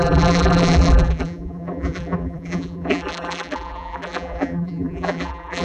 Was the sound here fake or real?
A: fake